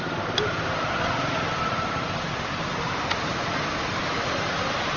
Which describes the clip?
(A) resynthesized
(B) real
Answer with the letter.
B